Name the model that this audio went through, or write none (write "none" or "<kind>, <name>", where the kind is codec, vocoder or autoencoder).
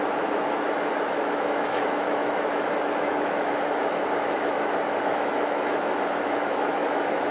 autoencoder, DAC-VAE